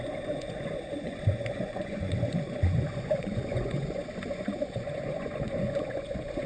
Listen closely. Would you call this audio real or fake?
fake